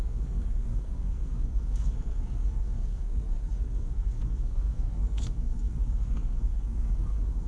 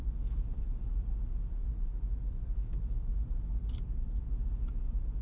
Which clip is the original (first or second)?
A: second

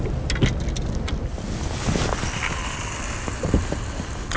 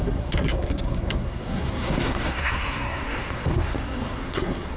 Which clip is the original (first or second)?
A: first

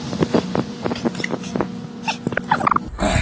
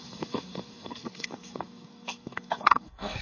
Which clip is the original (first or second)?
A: first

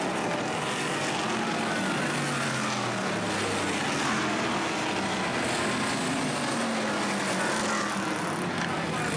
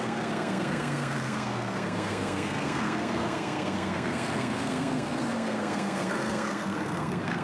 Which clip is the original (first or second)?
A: first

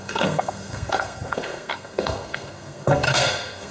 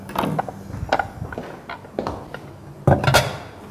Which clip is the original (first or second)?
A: second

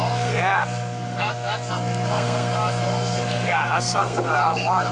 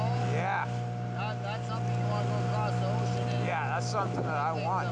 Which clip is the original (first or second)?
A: second